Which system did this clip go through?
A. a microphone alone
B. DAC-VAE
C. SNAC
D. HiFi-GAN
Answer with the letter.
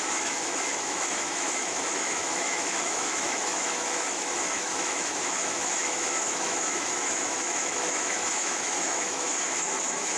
B